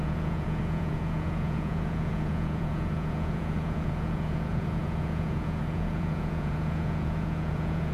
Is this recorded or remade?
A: remade